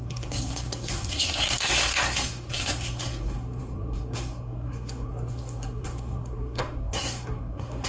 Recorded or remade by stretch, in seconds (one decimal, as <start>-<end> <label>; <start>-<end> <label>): 0.0-7.9 remade

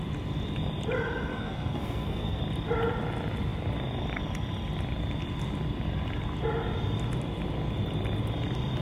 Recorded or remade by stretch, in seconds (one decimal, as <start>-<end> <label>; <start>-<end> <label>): 0.0-1.3 recorded; 1.3-2.4 remade; 2.4-8.8 recorded

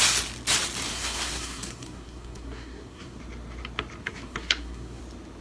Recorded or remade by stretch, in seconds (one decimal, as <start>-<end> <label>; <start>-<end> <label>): 0.0-0.9 recorded; 0.9-3.2 remade; 3.2-4.0 recorded; 4.0-5.0 remade; 5.0-5.4 recorded

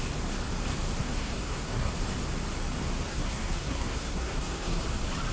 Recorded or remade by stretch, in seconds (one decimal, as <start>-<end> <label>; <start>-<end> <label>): 0.0-1.0 recorded; 1.0-1.9 remade; 1.9-3.1 recorded; 3.1-4.8 remade; 4.8-5.3 recorded

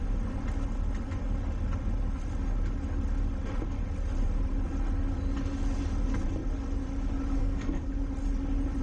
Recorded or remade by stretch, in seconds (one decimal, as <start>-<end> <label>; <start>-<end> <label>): 0.0-7.4 recorded; 7.4-7.9 remade; 7.9-8.8 recorded